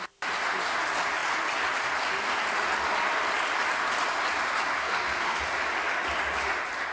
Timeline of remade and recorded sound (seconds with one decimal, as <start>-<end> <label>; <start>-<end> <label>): 0.0-4.8 recorded; 4.8-5.4 remade; 5.4-6.9 recorded